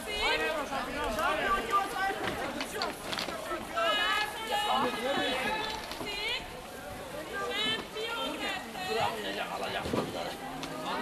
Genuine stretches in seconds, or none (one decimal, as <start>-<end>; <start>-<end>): 3.8-4.7